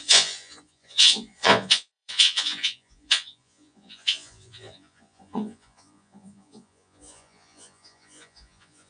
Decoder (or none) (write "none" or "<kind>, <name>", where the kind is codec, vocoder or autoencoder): vocoder, Vocos